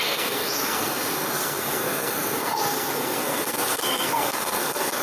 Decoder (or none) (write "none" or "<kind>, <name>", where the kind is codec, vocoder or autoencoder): codec, SNAC